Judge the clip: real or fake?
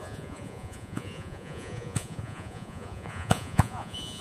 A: fake